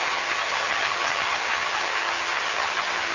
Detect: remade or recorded remade